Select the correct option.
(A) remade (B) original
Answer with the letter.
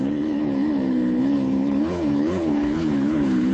A